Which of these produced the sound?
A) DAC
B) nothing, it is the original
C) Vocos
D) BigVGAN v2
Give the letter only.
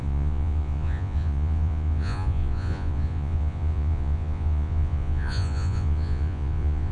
C